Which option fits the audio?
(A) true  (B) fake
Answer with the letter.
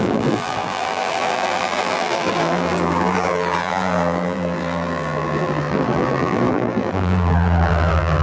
B